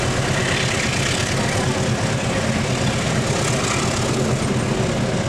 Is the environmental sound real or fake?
real